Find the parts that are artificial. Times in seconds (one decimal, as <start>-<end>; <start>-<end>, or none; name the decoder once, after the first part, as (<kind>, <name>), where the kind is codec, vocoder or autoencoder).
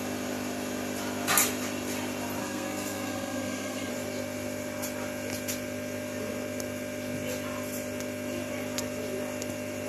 2.4-3.9 (codec, SNAC)